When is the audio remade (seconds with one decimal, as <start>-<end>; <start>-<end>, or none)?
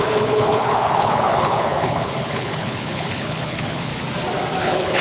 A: 0.0-3.9; 4.6-5.0